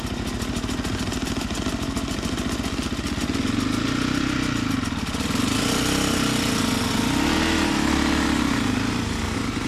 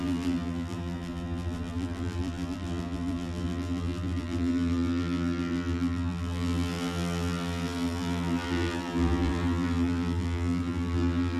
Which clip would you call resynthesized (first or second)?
second